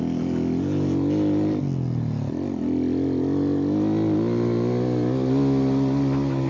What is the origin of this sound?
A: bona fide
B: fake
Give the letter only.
A